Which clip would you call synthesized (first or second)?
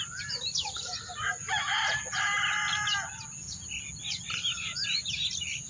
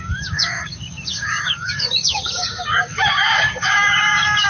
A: second